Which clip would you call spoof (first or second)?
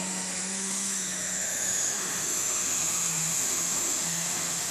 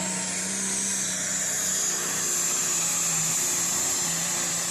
first